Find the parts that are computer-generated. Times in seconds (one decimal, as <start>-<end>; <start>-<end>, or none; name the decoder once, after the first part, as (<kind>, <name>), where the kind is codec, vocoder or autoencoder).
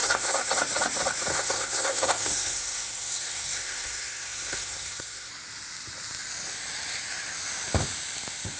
0.0-0.5 (codec, SNAC); 1.3-5.3